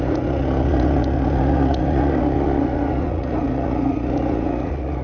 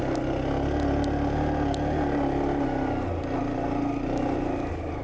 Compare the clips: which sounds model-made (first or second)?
first